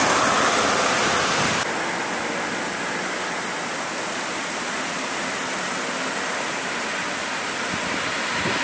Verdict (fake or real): real